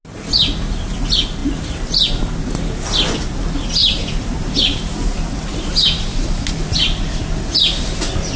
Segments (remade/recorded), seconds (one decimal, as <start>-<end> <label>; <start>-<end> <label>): 0.0-8.4 recorded